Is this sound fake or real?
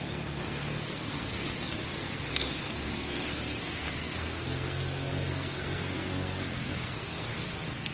fake